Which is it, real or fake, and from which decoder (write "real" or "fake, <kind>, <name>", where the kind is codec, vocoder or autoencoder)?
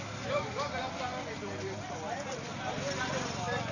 real